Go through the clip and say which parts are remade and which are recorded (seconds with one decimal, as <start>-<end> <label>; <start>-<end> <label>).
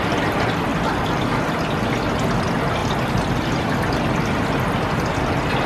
0.0-2.8 recorded; 2.8-3.7 remade; 3.7-5.7 recorded